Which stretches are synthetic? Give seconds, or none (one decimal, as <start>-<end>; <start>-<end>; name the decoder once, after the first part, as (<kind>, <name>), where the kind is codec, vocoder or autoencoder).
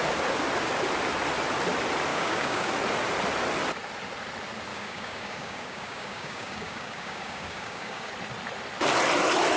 2.1-2.7 (codec, DAC); 4.7-8.1